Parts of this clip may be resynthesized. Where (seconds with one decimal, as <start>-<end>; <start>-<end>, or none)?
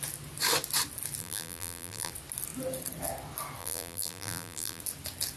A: 1.2-2.1; 3.6-4.8